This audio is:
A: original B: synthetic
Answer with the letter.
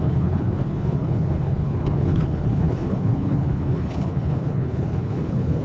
B